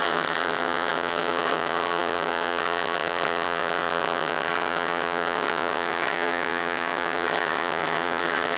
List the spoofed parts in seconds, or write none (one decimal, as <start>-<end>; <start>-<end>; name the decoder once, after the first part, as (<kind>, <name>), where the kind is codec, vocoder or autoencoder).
0.0-8.6 (vocoder, HiFi-GAN)